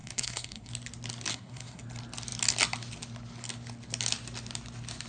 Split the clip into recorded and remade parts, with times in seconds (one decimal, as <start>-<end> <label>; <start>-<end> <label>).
0.0-0.7 remade; 0.7-1.3 recorded; 1.3-1.8 remade; 1.8-5.1 recorded